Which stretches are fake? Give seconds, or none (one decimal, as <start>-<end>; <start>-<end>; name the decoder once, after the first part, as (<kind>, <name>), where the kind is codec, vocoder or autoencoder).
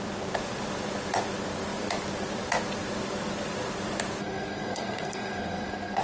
4.2-6.0 (codec, SNAC)